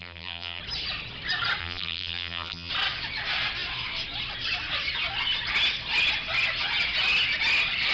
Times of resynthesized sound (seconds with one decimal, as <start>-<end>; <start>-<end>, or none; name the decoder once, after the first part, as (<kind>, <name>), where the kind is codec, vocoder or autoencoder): 0.0-0.6 (vocoder, BigVGAN v2); 1.6-2.7